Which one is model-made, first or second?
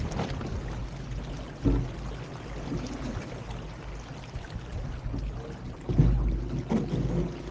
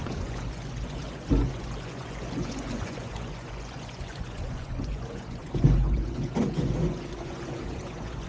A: second